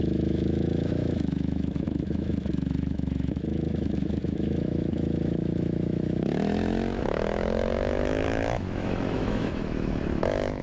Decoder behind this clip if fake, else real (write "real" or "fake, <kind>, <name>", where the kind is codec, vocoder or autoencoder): fake, autoencoder, DAC-VAE